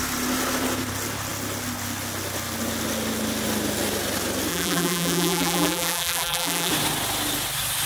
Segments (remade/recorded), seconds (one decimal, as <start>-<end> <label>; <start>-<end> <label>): 0.0-4.5 recorded; 4.5-6.7 remade; 6.7-7.9 recorded